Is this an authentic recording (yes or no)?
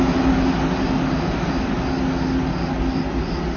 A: yes